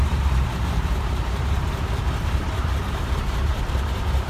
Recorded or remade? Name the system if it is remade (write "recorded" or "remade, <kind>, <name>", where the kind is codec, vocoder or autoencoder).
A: remade, vocoder, BigVGAN v2